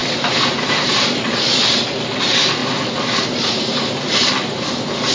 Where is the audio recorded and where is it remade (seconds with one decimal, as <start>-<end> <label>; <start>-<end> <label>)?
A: 0.0-1.6 remade; 1.6-2.6 recorded; 2.6-4.3 remade; 4.3-5.1 recorded